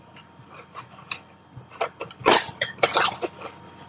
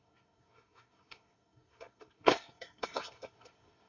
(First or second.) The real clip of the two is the first